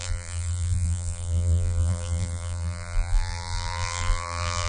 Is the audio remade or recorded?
remade